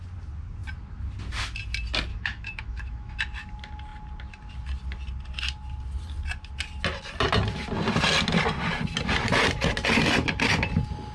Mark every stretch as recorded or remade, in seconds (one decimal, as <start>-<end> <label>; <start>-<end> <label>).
0.0-2.1 recorded; 2.1-3.2 remade; 3.2-11.1 recorded